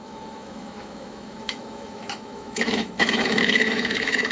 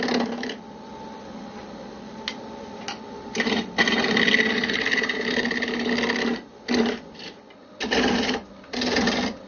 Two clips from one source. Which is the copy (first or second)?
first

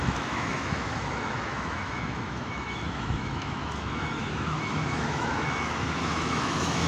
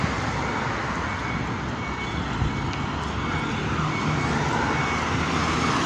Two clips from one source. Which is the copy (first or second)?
first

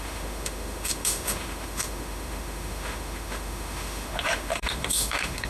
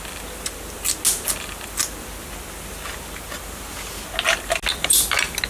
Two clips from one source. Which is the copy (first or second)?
first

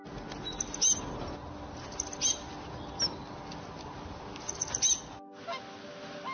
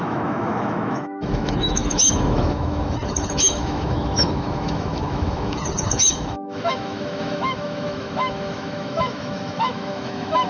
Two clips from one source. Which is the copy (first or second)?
second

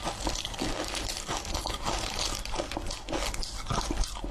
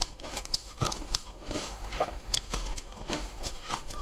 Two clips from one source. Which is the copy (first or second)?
second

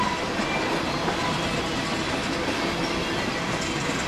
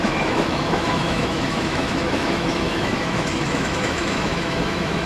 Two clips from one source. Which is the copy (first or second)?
second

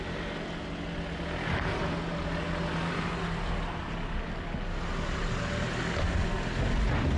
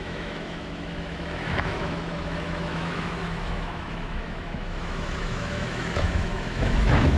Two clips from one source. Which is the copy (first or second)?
second